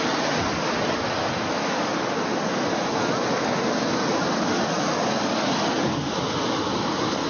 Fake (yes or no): no